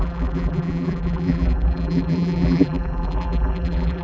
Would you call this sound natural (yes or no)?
no